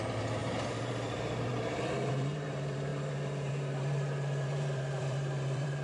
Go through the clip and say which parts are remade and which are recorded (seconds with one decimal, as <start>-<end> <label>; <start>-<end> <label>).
0.0-5.8 remade